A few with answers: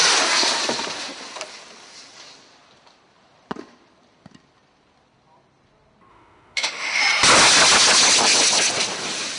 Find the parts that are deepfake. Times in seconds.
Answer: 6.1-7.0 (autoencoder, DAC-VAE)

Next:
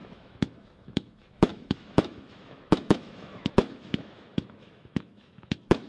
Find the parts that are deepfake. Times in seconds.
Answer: 0.0-5.9 (autoencoder, DAC-VAE)

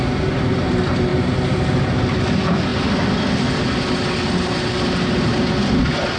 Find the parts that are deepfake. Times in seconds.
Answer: none

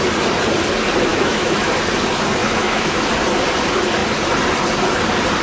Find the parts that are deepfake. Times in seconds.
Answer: 1.1-1.7 (autoencoder, DAC-VAE); 2.4-3.1

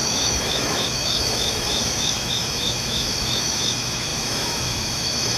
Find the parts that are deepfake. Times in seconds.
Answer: 0.0-5.4 (autoencoder, DAC-VAE)